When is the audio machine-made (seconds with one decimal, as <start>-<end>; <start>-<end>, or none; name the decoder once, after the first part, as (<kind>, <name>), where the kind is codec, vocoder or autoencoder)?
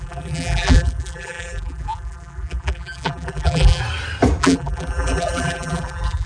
0.0-3.8 (vocoder, BigVGAN v2); 4.4-6.3